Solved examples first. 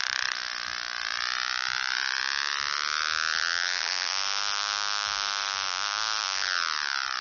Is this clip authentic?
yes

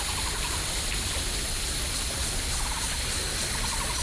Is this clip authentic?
yes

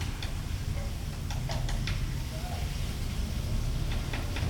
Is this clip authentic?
yes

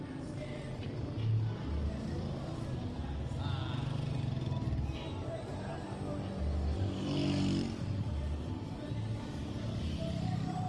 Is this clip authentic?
yes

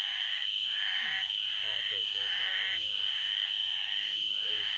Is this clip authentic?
no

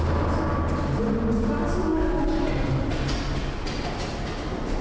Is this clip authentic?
yes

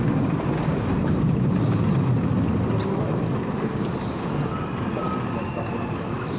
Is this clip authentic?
yes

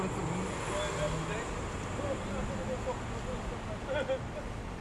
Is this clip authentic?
yes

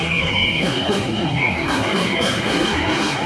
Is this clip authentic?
no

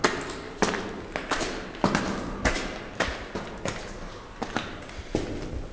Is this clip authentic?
yes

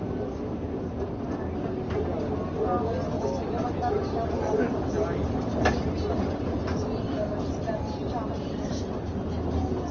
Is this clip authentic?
yes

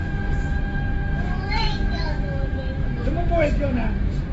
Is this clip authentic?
no